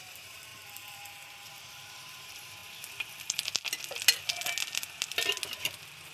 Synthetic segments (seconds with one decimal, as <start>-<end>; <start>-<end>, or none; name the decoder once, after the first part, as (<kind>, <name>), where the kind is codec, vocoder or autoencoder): 0.0-2.6 (vocoder, BigVGAN v2)